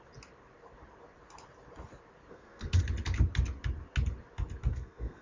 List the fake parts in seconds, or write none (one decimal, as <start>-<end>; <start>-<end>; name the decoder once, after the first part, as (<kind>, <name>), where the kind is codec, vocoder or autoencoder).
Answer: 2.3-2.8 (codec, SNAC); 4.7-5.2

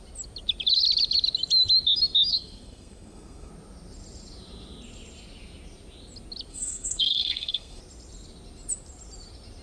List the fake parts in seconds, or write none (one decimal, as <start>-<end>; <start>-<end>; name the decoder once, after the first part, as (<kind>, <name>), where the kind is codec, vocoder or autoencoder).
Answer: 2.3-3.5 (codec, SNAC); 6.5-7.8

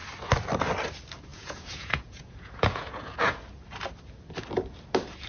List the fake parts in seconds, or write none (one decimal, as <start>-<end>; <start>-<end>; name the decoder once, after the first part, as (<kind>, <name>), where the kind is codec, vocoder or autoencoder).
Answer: 1.3-3.4 (vocoder, Vocos)